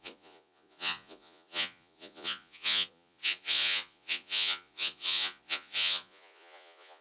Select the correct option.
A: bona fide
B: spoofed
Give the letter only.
B